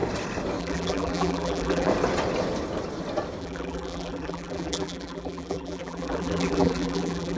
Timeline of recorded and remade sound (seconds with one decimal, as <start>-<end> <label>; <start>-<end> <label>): 0.0-0.6 recorded; 0.6-1.9 remade; 1.9-3.4 recorded; 3.4-7.4 remade